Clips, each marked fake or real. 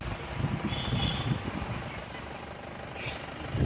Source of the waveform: real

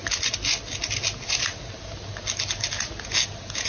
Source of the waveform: real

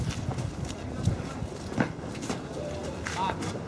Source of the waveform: real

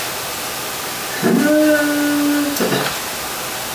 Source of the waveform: real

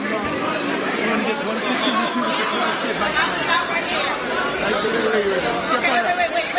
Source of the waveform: real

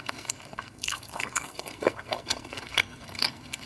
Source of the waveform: fake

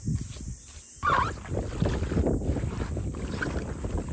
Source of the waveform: real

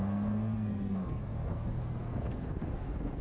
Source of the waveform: fake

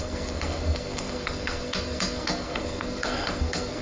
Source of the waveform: fake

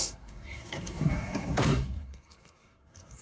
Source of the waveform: fake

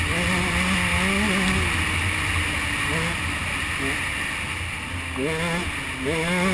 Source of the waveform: real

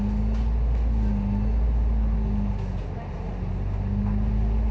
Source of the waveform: real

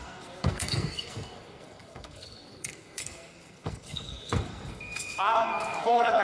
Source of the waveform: fake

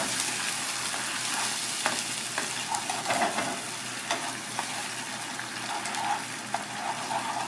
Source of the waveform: real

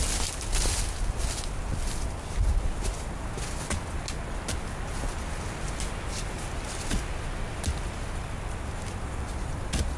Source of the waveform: real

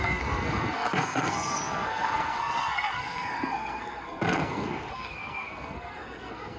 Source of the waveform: fake